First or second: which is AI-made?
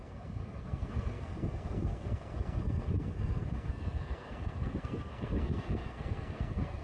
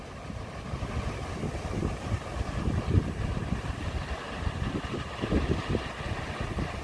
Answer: first